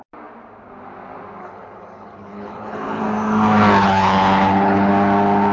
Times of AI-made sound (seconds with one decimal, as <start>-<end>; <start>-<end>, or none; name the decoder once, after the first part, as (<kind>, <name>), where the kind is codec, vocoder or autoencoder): 1.4-3.0 (codec, HILCodec); 3.8-4.9